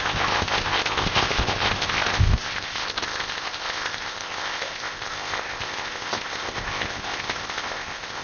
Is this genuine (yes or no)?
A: no